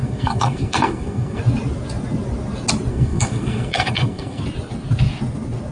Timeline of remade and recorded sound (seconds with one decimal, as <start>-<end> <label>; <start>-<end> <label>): 0.0-1.4 remade; 1.4-2.9 recorded; 2.9-4.4 remade; 4.4-5.7 recorded